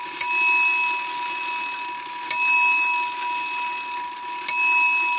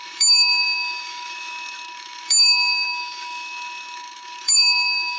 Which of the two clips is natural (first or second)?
first